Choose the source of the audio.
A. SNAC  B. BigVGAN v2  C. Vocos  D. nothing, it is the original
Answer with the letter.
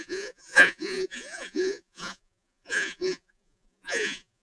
C